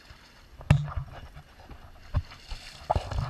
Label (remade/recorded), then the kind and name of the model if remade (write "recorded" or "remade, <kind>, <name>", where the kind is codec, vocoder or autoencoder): recorded